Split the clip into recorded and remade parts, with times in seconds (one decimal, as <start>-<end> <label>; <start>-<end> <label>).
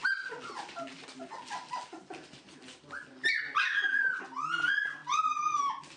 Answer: 0.0-6.0 recorded